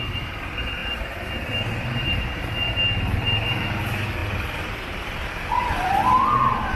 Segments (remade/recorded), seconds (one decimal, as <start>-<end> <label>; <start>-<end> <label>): 0.0-4.2 recorded; 4.2-5.9 remade; 5.9-6.8 recorded